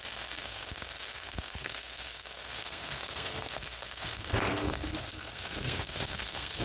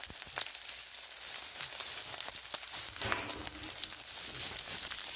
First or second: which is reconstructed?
first